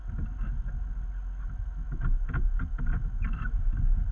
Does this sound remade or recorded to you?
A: recorded